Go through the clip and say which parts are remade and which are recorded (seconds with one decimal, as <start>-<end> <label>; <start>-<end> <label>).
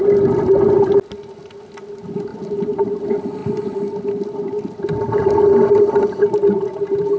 0.0-2.3 recorded; 2.3-2.9 remade; 2.9-3.4 recorded; 3.4-5.9 remade; 5.9-7.2 recorded